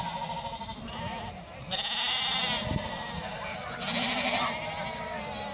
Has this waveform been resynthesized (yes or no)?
no